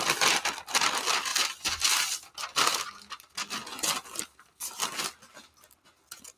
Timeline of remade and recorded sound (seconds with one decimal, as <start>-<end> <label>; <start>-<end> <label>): 0.0-6.4 recorded